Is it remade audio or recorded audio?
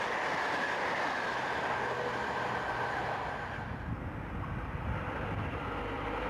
recorded